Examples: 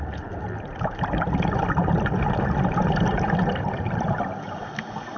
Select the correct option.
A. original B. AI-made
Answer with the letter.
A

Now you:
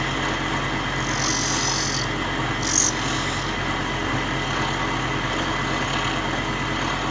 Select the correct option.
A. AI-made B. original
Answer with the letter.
B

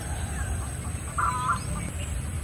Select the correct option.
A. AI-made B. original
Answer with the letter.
B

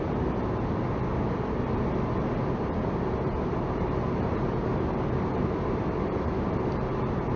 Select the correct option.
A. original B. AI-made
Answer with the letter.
A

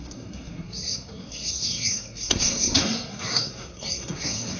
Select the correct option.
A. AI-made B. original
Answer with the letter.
A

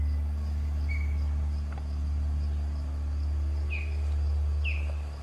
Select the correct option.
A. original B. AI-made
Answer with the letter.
A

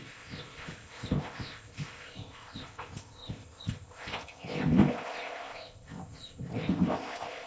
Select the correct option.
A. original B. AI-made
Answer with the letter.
B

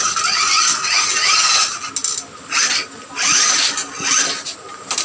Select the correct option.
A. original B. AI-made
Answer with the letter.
A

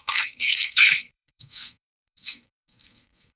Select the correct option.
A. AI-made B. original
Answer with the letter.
A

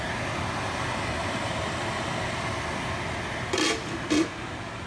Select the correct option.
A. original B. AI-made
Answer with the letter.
A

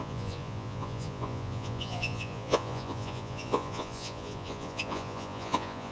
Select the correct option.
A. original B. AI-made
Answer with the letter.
B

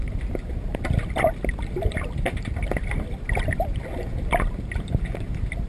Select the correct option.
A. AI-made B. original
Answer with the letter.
A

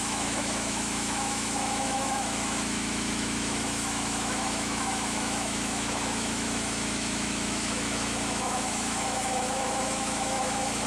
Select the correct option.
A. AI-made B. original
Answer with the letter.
A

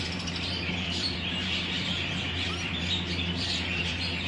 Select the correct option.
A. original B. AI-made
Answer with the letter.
B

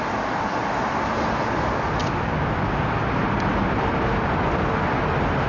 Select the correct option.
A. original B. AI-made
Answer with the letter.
A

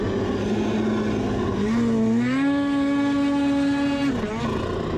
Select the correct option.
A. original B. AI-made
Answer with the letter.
A